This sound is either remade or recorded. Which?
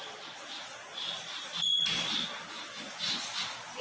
recorded